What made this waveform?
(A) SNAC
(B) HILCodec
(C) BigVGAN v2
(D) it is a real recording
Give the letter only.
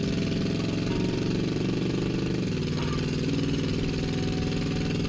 D